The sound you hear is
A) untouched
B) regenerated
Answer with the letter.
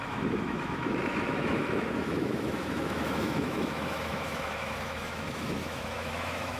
B